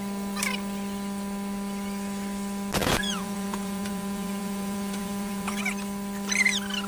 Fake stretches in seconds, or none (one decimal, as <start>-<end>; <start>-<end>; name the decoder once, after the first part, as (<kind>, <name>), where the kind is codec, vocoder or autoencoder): 2.8-5.6 (vocoder, Vocos)